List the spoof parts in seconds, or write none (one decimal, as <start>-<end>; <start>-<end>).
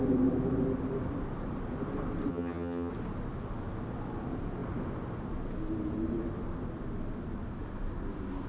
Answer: 2.3-2.9